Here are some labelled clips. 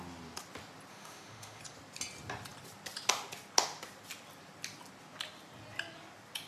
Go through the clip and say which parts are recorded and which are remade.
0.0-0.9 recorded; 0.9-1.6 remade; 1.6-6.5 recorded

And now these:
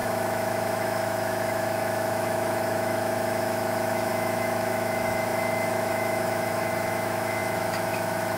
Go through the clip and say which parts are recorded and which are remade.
0.0-8.4 remade

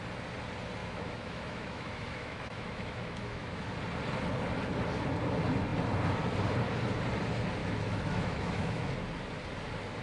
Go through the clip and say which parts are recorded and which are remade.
0.0-0.8 recorded; 0.8-3.7 remade; 3.7-7.6 recorded; 7.6-8.9 remade; 8.9-10.0 recorded